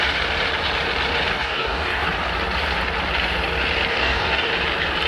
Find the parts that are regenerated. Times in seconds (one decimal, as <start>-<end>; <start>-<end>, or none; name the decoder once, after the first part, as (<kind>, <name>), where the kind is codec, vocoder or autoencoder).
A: 1.3-2.1 (codec, DAC); 3.9-4.5